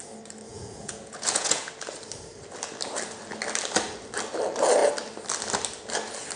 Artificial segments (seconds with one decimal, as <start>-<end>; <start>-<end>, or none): 0.5-1.7